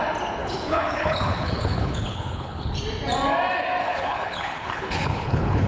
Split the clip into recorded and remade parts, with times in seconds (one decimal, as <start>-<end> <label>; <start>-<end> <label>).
0.0-0.4 recorded; 0.4-2.7 remade; 2.7-3.8 recorded; 3.8-5.7 remade

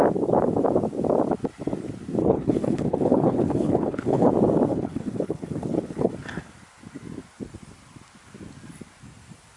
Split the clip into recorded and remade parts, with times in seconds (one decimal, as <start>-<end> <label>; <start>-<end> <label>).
0.0-2.2 recorded; 2.2-4.3 remade; 4.3-4.7 recorded; 4.7-6.1 remade; 6.1-9.6 recorded

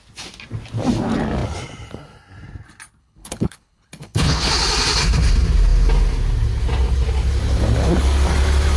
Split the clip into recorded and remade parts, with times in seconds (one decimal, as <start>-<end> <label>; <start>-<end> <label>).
0.0-3.0 recorded; 3.0-4.5 remade; 4.5-8.8 recorded

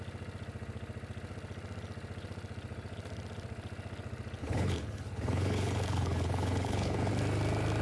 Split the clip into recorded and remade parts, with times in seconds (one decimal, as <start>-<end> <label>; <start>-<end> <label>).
0.0-4.4 recorded; 4.4-7.1 remade; 7.1-7.8 recorded

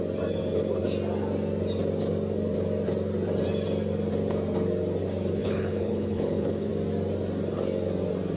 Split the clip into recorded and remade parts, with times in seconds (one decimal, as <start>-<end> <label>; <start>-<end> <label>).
0.0-5.4 recorded; 5.4-6.7 remade; 6.7-8.4 recorded

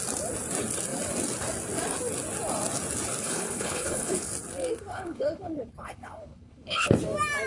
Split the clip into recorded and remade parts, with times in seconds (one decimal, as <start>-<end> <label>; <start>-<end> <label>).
0.0-3.2 recorded; 3.2-4.3 remade; 4.3-4.9 recorded; 4.9-6.9 remade; 6.9-7.5 recorded

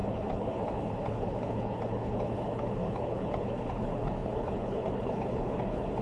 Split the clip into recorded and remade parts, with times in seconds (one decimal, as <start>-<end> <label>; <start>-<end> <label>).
0.0-6.0 remade